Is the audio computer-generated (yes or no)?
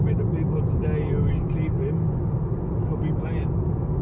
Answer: no